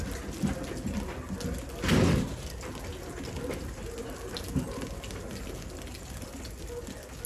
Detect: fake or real real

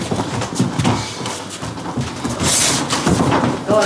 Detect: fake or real real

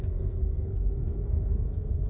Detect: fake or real fake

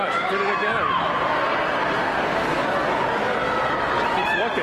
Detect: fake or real real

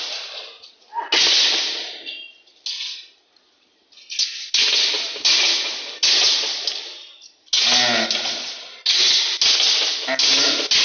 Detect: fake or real real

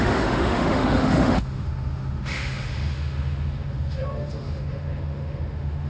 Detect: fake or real fake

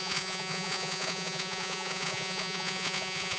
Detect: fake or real fake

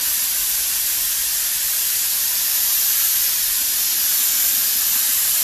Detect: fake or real real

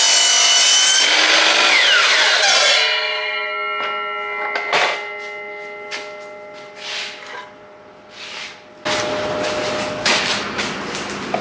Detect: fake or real real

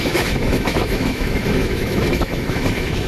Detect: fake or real fake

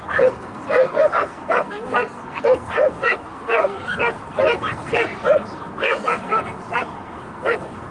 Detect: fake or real fake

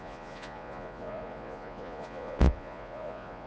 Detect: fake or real fake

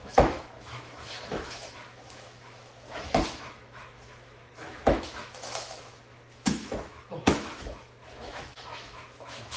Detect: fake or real fake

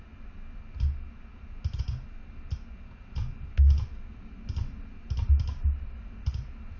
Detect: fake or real real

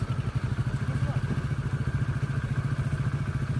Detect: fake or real real